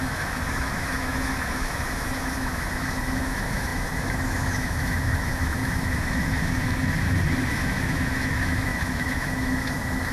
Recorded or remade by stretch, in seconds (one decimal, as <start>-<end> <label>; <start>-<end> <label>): 0.0-10.1 remade